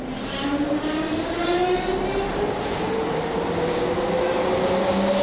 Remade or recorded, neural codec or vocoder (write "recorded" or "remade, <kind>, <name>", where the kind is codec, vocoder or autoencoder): recorded